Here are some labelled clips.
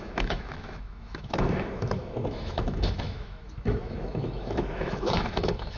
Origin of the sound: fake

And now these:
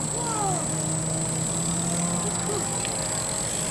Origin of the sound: real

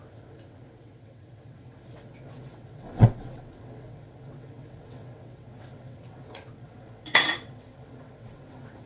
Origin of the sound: fake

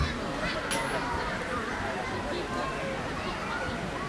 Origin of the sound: real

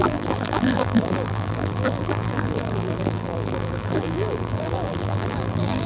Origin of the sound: fake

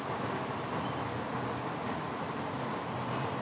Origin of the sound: fake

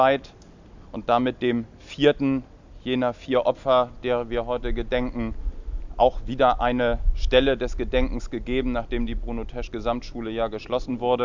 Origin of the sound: real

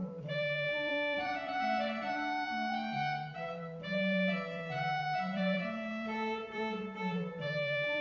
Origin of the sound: fake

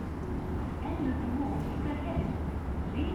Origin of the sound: real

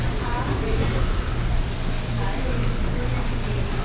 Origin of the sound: real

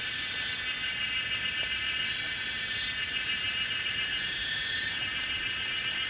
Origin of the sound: real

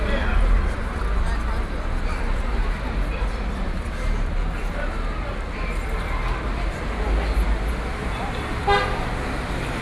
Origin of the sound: real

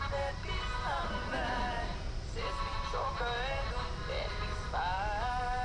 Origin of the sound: fake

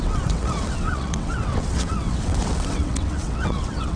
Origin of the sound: fake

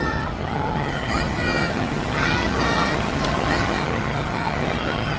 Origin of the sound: fake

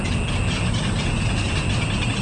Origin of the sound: real